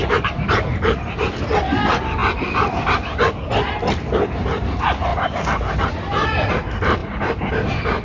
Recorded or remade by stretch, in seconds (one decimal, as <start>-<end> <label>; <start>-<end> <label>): 0.0-1.2 remade; 1.2-7.0 recorded; 7.0-7.5 remade; 7.5-8.0 recorded